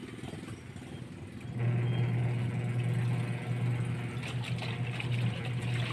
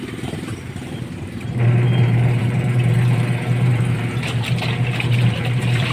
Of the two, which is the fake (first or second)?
second